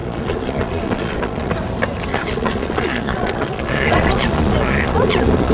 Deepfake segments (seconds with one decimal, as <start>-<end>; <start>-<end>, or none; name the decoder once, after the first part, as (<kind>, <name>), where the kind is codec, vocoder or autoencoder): 0.0-1.5 (vocoder, Vocos); 2.1-5.5